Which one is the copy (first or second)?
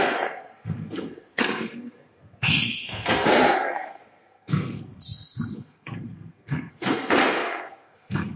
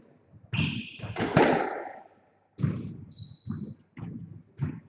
first